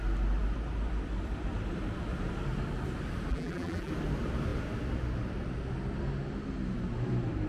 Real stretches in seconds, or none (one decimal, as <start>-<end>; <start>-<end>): 0.0-3.3; 3.9-7.5

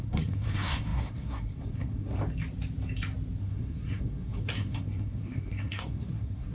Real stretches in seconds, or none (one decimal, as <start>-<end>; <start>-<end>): 2.2-3.4

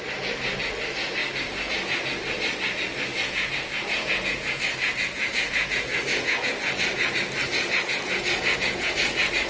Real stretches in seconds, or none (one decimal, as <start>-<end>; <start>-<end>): 0.0-3.1; 6.5-7.5

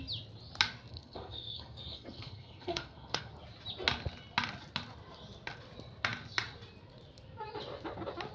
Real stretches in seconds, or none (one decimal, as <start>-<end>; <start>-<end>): 0.0-0.9; 3.3-8.3

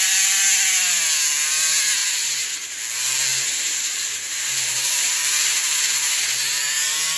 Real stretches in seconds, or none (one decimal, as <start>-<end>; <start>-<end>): 0.0-2.0; 2.8-3.3